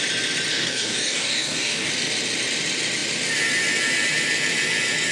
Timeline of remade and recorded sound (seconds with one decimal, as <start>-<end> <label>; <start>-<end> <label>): 0.0-0.5 recorded; 0.5-1.9 remade; 1.9-5.1 recorded